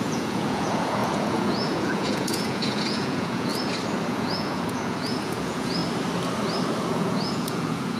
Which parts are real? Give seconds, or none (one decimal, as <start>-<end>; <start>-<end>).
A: 3.5-4.1; 5.8-6.8